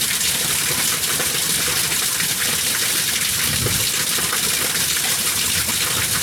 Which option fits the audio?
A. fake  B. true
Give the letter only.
B